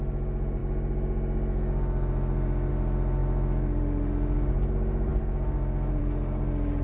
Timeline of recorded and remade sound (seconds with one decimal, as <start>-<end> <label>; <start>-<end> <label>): 0.0-6.8 recorded